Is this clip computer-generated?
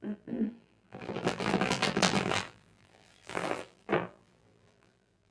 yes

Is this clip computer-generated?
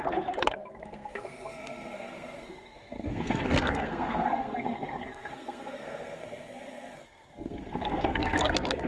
yes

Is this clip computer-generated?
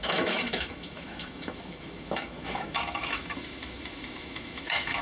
yes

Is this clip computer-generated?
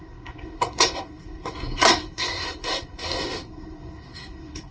yes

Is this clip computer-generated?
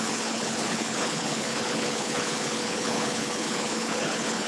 yes